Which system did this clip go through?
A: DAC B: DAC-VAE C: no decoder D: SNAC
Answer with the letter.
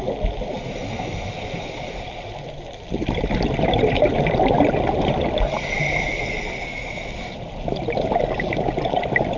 C